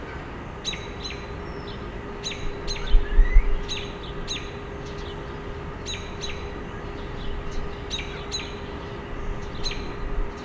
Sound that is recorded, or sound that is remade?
recorded